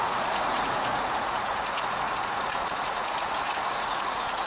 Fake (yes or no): yes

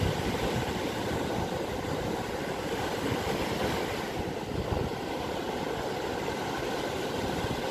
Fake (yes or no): yes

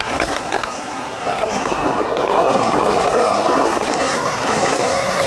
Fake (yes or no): yes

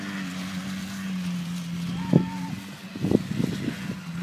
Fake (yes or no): no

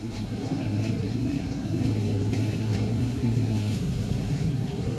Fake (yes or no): yes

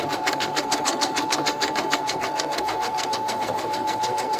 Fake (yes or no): yes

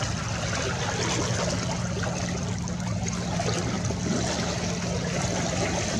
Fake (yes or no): no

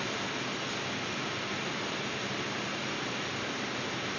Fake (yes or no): yes